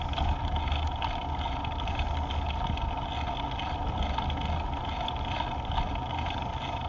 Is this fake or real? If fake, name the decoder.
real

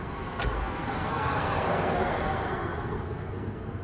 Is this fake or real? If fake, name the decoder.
fake, codec, SNAC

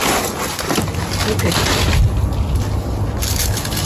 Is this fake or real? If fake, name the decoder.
real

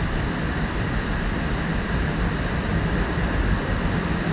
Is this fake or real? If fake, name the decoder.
real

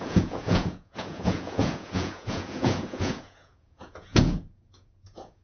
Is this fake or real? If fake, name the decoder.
fake, vocoder, Vocos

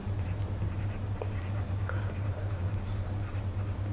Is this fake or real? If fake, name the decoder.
real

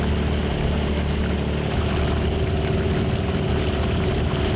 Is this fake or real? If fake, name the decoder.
real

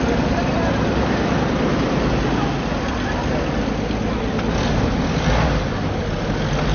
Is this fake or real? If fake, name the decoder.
real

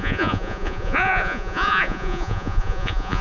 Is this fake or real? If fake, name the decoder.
fake, vocoder, Vocos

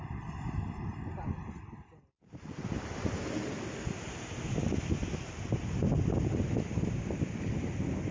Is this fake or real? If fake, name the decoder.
real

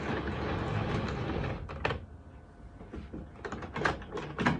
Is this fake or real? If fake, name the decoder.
real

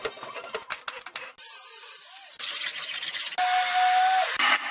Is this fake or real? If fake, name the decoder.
real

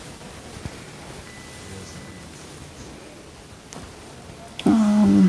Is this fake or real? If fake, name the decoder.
real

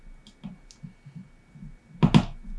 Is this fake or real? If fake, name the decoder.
real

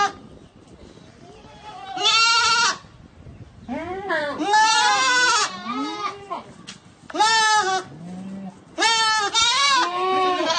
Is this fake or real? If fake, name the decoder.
real